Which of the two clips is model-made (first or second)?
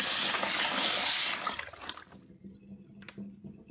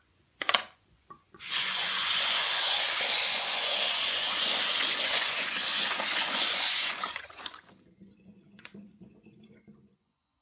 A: second